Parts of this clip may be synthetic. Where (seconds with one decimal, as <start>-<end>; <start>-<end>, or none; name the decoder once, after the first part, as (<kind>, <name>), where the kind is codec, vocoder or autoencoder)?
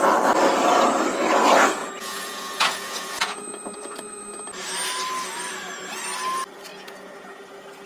1.8-4.4 (vocoder, Vocos); 6.7-7.4